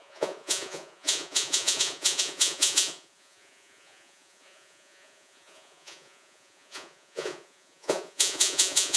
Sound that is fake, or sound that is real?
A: fake